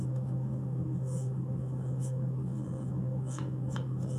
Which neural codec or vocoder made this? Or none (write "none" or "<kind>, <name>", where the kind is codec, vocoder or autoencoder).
autoencoder, DAC-VAE